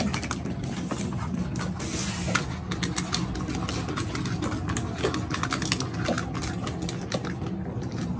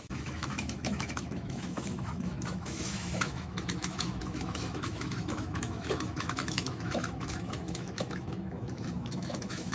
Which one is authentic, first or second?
first